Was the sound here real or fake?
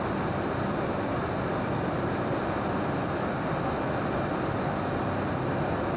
real